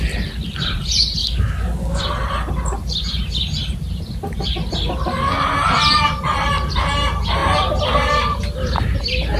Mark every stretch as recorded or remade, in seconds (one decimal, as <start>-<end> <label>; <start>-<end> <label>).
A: 0.0-1.2 recorded; 1.2-2.0 remade; 2.0-9.4 recorded